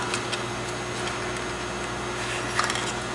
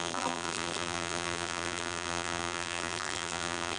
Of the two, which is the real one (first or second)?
first